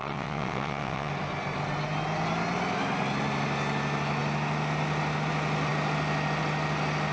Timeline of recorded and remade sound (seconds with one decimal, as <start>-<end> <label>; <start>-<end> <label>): 0.0-1.1 remade; 1.1-7.1 recorded